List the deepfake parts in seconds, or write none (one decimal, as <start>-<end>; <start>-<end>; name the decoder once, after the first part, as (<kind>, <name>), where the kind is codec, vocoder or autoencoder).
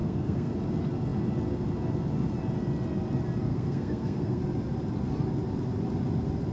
0.0-0.5 (codec, SNAC); 3.5-4.4